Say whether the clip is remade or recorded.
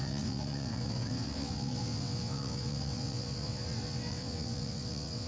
remade